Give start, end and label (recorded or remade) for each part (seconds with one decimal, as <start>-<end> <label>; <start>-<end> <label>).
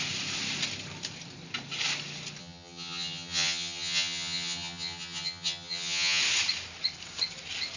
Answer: 0.0-2.4 recorded; 2.4-6.2 remade; 6.2-7.8 recorded